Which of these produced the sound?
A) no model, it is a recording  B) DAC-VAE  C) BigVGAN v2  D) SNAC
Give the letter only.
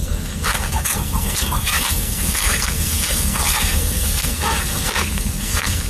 D